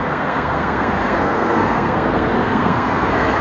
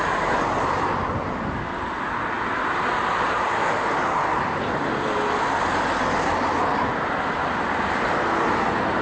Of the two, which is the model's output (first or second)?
first